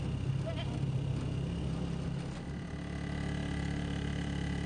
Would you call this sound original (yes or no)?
yes